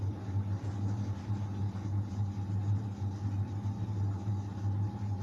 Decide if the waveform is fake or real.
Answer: real